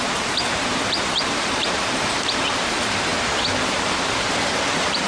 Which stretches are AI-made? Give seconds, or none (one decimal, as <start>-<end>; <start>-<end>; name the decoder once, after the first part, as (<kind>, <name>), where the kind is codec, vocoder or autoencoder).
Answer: 0.0-3.1 (vocoder, BigVGAN v2); 3.7-5.1